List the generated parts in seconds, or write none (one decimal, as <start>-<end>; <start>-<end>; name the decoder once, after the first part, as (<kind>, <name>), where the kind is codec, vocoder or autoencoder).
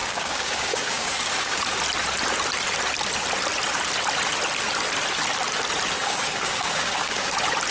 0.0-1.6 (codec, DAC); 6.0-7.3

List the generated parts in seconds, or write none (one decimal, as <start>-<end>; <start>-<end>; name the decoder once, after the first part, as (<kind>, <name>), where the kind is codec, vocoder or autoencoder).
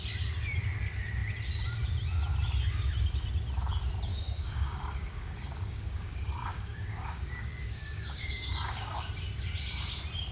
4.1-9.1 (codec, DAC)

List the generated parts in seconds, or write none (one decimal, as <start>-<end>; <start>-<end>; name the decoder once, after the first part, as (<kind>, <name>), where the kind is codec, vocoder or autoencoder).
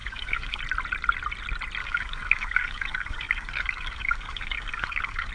0.0-0.6 (codec, DAC); 1.8-5.3